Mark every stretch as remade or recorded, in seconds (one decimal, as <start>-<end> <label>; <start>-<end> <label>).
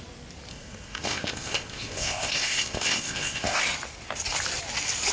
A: 0.0-0.5 recorded; 0.5-3.6 remade; 3.6-5.1 recorded